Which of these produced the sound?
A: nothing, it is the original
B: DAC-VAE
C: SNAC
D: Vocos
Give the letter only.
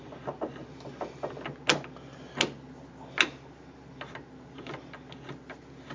A